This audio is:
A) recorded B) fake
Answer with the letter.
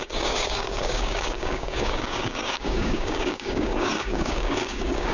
B